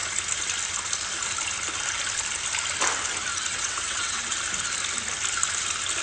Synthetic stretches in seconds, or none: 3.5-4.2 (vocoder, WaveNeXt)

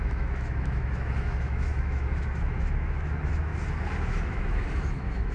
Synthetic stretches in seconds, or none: 0.0-3.5 (autoencoder, DAC-VAE); 4.0-5.3

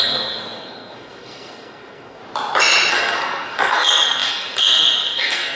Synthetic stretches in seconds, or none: 0.0-2.2 (codec, SNAC); 2.9-5.6

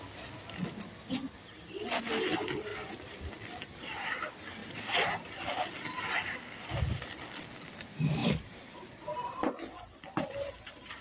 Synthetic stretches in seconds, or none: 2.7-3.3 (vocoder, BigVGAN v2); 4.6-5.3; 8.2-9.5